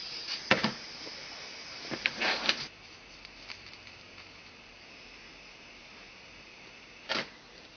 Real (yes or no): no